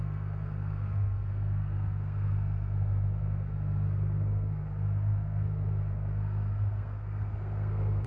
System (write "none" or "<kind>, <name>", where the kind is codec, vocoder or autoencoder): codec, SNAC